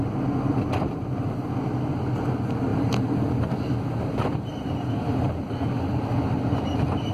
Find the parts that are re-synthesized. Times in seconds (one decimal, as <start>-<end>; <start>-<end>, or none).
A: none